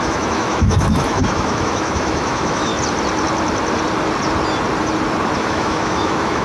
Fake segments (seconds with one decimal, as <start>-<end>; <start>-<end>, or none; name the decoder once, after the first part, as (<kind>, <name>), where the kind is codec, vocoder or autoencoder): 0.0-2.7 (autoencoder, DAC-VAE); 5.4-6.4